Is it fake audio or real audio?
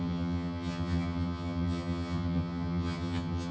fake